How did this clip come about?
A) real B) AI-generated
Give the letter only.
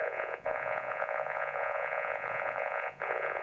B